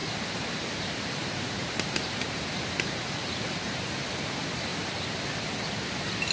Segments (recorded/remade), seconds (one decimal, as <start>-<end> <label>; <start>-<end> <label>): 0.0-3.8 remade; 3.8-4.7 recorded; 4.7-5.3 remade; 5.3-6.3 recorded